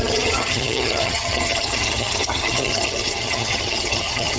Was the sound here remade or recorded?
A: remade